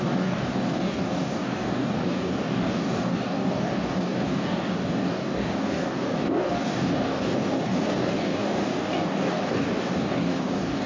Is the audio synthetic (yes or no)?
yes